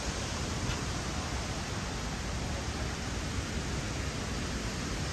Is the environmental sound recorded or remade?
recorded